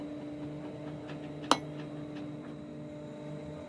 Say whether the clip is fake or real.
real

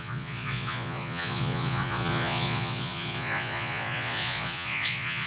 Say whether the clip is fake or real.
fake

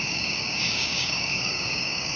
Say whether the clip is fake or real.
fake